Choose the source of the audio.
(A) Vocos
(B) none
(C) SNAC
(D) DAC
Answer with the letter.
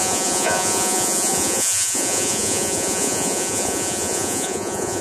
A